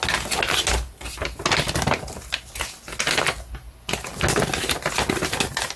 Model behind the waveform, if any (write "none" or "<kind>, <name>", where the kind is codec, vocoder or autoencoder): none